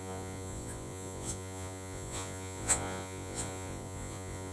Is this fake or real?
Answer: fake